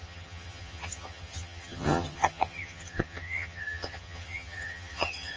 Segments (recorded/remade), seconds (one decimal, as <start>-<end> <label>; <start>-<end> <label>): 0.0-5.4 remade